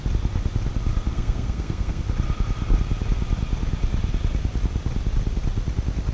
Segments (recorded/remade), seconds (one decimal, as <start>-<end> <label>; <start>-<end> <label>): 0.0-1.1 recorded; 1.1-2.0 remade; 2.0-6.1 recorded